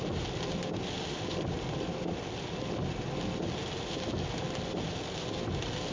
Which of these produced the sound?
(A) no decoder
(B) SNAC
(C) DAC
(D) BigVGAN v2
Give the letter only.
A